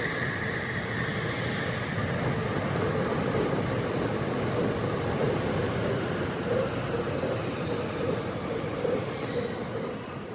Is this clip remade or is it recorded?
recorded